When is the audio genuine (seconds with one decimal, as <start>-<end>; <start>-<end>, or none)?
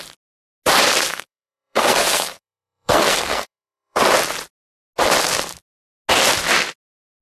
0.0-1.1; 4.0-7.2